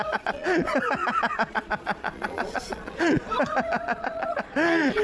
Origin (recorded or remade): remade